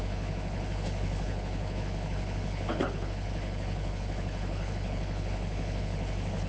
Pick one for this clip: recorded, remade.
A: remade